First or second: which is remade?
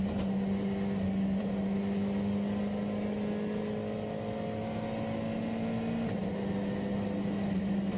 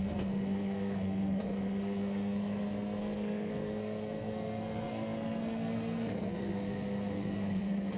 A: second